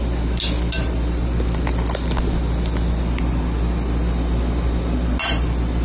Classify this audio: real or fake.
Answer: real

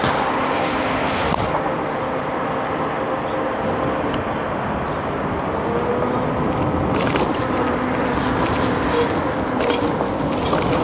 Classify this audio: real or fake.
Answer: real